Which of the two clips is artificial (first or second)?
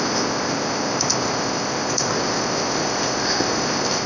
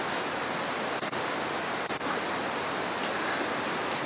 first